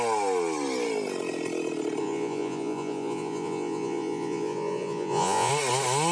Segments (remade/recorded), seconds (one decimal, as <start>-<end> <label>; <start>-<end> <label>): 0.0-2.0 recorded; 2.0-5.5 remade; 5.5-6.1 recorded